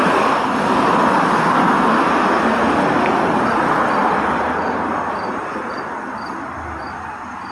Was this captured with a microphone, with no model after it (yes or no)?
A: yes